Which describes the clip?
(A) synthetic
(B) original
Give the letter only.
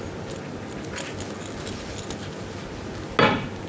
B